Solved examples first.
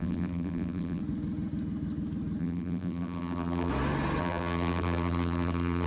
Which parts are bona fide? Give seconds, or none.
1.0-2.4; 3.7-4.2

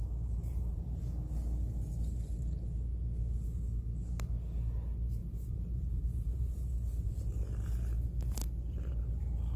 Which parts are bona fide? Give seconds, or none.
0.0-0.4; 1.0-5.2; 7.2-9.6

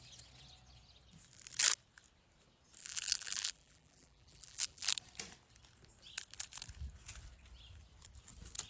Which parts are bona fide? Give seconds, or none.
0.0-2.8; 4.9-8.7

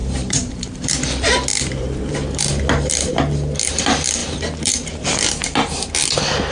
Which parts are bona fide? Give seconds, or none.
0.9-1.5; 2.4-4.2; 5.0-6.5

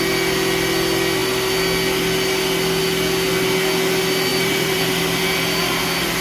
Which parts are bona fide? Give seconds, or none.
0.0-4.3; 5.0-6.2

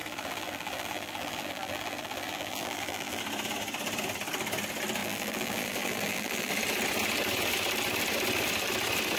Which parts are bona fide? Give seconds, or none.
3.2-5.0; 6.5-9.2

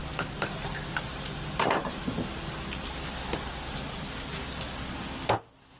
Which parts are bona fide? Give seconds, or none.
0.0-5.8